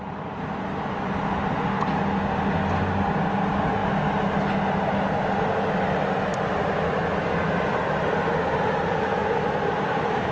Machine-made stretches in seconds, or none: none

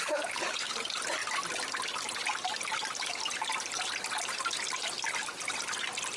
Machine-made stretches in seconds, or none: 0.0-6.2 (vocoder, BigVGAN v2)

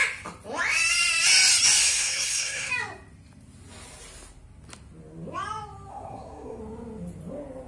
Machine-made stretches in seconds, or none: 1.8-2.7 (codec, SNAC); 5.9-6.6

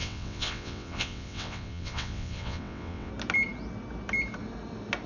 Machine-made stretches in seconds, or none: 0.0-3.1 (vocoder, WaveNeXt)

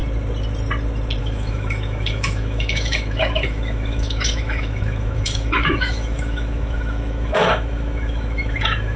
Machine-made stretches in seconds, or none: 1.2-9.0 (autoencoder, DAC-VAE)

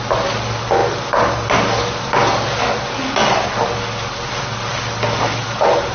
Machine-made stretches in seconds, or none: none

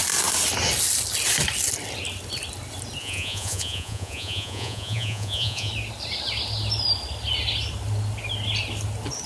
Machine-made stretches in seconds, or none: 3.0-5.7 (vocoder, Vocos)